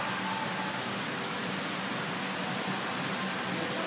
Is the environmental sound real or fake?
real